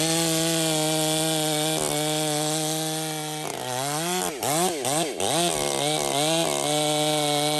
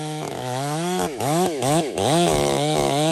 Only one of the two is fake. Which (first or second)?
second